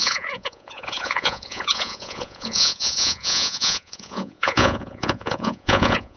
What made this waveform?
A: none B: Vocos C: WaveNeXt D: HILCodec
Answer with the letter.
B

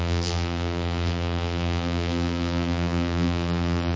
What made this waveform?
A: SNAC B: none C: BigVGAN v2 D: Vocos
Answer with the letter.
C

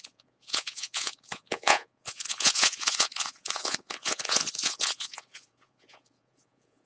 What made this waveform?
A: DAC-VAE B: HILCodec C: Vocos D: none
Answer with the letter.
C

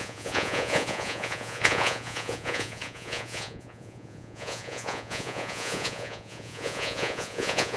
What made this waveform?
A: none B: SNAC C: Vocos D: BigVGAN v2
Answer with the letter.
C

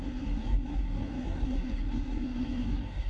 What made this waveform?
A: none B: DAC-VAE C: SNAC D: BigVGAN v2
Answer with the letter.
C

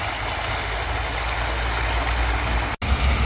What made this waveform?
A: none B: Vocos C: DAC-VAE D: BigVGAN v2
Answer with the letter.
A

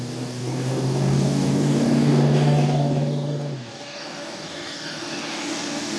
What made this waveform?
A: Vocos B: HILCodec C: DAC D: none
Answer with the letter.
C